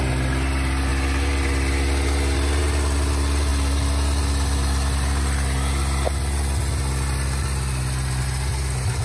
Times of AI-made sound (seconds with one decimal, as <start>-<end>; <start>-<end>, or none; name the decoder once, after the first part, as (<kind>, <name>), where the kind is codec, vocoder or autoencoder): none